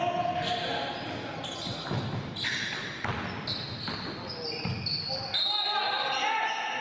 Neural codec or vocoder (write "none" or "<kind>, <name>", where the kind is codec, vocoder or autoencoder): none